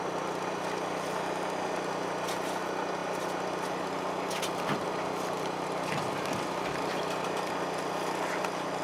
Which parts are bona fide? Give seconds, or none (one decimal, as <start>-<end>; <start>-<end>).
0.0-8.8